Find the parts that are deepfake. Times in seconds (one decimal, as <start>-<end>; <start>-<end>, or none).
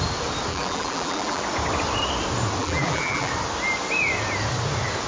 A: 0.5-1.4; 2.6-3.3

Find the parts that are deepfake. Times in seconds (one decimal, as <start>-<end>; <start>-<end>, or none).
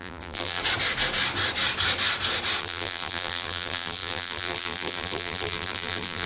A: 0.0-0.6; 2.6-6.3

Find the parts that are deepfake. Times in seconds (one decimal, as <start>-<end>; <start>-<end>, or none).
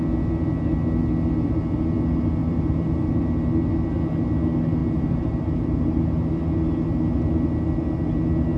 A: 2.4-3.2; 4.8-6.0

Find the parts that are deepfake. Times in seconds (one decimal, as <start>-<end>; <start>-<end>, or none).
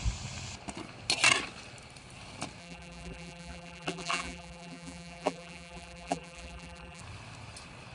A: 2.6-7.0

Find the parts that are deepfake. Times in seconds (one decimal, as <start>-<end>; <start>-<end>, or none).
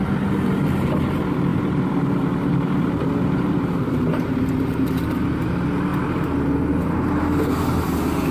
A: 1.5-5.4; 5.9-7.2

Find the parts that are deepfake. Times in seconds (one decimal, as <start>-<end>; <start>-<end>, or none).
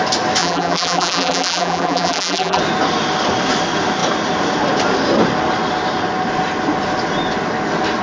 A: 0.4-2.6